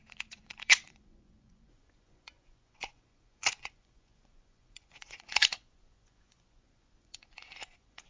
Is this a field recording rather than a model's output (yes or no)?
no